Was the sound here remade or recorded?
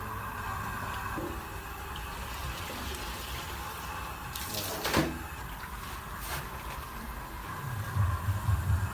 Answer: recorded